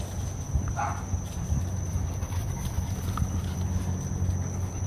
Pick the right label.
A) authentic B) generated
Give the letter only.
A